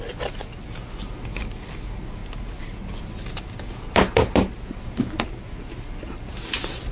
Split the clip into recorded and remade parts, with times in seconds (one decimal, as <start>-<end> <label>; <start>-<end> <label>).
0.0-6.9 recorded